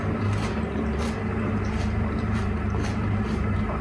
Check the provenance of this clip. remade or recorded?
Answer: remade